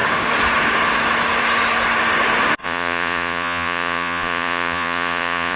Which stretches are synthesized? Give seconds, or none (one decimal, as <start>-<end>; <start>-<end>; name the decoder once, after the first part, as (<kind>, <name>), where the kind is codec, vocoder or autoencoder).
2.6-5.6 (vocoder, Vocos)